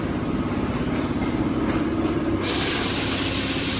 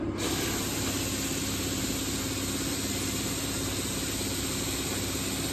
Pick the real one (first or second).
second